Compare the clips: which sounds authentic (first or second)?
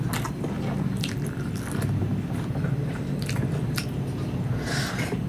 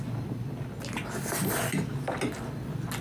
second